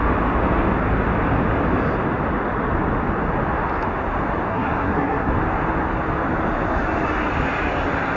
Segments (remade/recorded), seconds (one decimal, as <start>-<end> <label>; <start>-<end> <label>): 0.0-4.5 recorded; 4.5-5.3 remade; 5.3-8.2 recorded